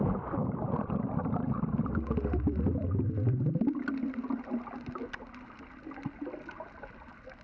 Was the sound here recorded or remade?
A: recorded